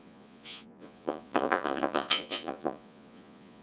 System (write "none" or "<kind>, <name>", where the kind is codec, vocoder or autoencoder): vocoder, Vocos